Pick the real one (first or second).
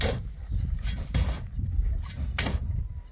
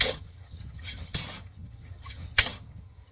first